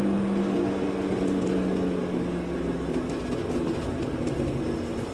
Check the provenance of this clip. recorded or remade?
recorded